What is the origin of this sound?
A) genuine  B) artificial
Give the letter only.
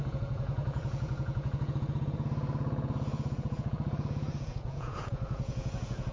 B